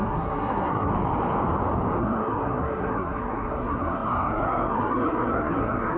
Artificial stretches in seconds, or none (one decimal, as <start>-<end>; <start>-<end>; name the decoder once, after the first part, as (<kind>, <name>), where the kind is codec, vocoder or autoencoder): 0.0-0.9 (codec, SNAC); 2.0-6.0